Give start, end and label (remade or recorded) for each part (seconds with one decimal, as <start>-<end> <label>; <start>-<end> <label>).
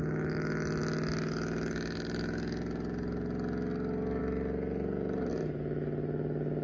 0.0-6.6 recorded